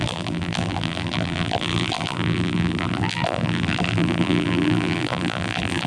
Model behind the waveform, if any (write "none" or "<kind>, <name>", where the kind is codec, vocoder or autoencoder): vocoder, BigVGAN v2